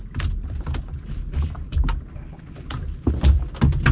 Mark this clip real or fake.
real